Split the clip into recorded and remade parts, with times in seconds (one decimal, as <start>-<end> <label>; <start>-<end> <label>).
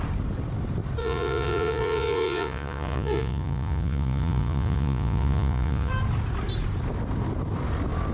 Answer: 0.0-1.0 recorded; 1.0-5.9 remade; 5.9-8.1 recorded